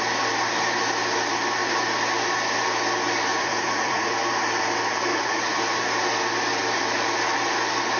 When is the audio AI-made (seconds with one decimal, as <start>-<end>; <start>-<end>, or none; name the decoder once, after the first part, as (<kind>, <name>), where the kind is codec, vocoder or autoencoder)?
3.3-4.1 (vocoder, Vocos); 5.1-5.6

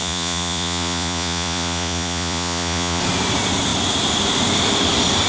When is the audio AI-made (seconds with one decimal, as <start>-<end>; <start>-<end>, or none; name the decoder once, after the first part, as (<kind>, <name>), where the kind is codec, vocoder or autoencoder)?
0.0-3.0 (vocoder, Vocos)

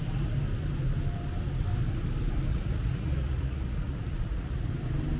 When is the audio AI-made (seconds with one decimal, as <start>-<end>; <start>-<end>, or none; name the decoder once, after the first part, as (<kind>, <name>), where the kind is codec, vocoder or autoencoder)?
2.5-4.7 (vocoder, Vocos)

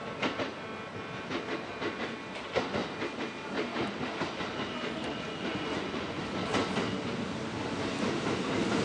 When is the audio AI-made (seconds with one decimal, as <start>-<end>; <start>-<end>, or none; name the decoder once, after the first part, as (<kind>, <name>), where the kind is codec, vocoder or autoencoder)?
5.1-6.2 (vocoder, Vocos)

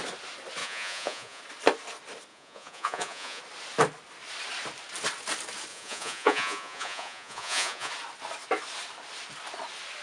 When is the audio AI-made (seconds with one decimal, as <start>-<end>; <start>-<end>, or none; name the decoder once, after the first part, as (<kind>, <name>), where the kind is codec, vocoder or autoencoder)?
0.6-1.4 (vocoder, Vocos); 2.3-3.4; 5.7-7.9